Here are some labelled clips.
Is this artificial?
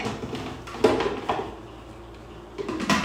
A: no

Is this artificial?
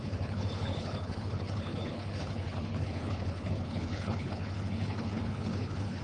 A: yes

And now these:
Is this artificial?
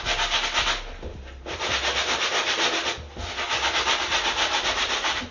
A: no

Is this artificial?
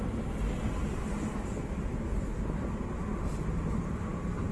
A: no